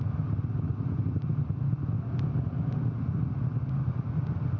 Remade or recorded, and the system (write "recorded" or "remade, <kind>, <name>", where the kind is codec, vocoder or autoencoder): recorded